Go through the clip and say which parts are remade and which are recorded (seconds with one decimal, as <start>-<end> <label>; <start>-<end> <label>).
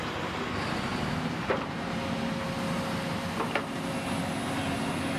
0.0-5.2 recorded